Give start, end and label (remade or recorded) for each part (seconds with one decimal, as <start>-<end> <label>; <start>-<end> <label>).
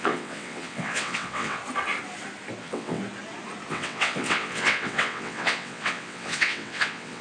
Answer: 0.0-1.6 remade; 1.6-2.6 recorded; 2.6-3.0 remade; 3.0-3.7 recorded; 3.7-7.2 remade